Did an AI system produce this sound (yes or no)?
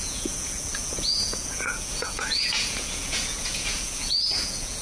yes